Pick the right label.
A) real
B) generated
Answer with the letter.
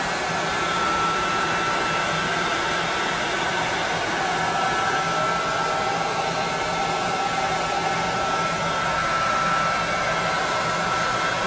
A